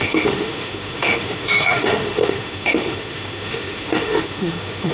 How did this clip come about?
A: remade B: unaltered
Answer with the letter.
A